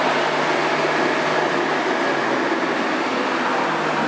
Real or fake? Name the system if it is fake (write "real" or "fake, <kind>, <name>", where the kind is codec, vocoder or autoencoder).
real